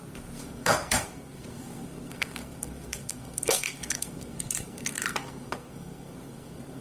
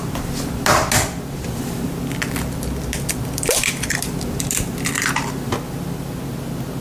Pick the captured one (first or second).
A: second